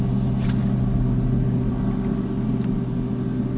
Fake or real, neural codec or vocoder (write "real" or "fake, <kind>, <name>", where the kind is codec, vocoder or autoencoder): real